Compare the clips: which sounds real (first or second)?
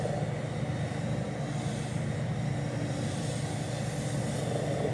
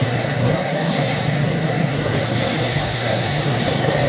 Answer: first